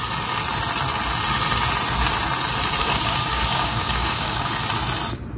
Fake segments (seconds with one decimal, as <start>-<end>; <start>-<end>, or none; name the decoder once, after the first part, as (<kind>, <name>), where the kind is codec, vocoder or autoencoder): 2.8-4.5 (codec, DAC)